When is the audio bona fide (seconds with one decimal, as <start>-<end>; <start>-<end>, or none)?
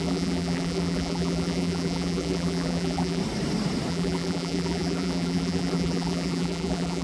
3.2-3.9